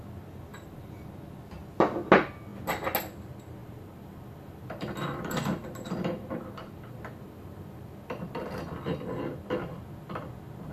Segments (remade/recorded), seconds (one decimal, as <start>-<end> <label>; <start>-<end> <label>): 0.0-0.5 recorded; 0.5-1.1 remade; 1.1-3.6 recorded; 3.6-8.6 remade; 8.6-10.7 recorded